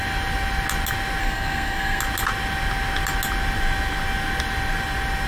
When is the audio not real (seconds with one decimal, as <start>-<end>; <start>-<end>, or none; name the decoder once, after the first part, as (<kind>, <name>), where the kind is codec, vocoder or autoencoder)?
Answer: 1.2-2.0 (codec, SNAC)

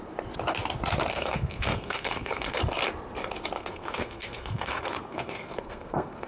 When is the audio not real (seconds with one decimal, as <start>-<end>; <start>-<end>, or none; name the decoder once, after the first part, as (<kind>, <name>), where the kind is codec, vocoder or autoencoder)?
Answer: 1.1-2.6 (codec, SNAC); 3.6-6.3

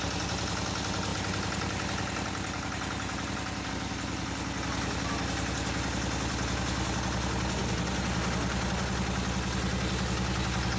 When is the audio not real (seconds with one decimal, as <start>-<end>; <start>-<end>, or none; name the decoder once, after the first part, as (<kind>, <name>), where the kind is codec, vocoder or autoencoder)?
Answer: none

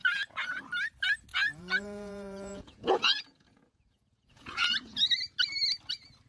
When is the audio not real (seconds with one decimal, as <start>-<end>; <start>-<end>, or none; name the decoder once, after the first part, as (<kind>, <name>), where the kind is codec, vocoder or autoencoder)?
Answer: 0.0-0.6 (vocoder, Vocos); 1.3-5.1

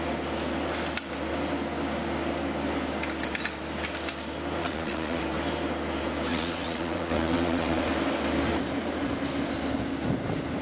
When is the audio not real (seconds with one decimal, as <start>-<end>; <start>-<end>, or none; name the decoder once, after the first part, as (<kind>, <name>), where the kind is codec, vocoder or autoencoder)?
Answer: 4.6-5.2 (vocoder, WaveNeXt); 6.3-7.9